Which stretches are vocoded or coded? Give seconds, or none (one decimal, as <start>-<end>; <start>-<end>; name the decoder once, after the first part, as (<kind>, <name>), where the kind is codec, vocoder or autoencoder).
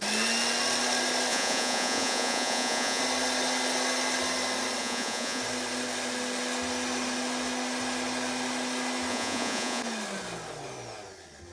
1.3-3.0 (vocoder, Vocos); 4.8-5.4; 9.1-9.8